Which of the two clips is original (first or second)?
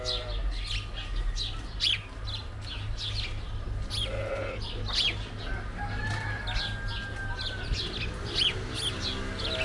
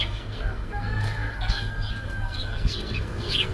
first